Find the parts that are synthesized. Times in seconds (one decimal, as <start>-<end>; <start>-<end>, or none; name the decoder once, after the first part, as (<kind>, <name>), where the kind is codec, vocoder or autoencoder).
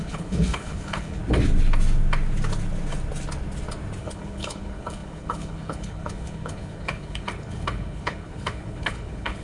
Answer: 0.0-1.2 (codec, HILCodec); 4.0-9.4